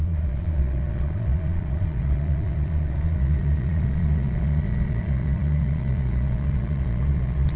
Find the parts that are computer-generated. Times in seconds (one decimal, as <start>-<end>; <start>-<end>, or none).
0.0-7.6